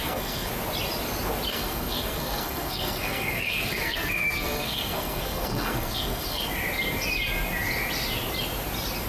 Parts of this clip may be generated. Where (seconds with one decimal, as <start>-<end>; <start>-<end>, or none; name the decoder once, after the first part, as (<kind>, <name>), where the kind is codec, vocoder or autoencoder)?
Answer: 0.0-0.5 (codec, SNAC); 1.5-6.5